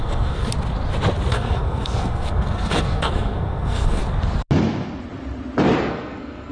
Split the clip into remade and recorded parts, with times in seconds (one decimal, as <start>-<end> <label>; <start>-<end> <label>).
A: 0.0-0.5 remade; 0.5-1.3 recorded; 1.3-4.0 remade; 4.0-5.9 recorded; 5.9-6.5 remade